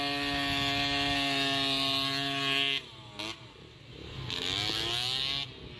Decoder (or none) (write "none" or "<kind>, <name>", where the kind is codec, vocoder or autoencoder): none